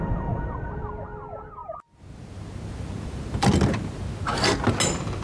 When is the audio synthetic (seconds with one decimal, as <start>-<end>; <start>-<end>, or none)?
none